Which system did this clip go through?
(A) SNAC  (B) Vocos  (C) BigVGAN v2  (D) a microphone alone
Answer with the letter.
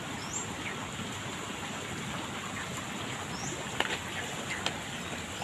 D